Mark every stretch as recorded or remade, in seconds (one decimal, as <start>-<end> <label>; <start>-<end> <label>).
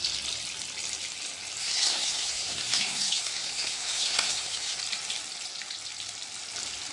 0.0-1.6 recorded; 1.6-4.8 remade; 4.8-6.9 recorded